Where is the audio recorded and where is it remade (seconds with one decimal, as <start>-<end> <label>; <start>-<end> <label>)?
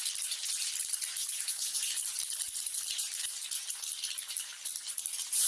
0.0-1.2 recorded; 1.2-1.8 remade; 1.8-5.5 recorded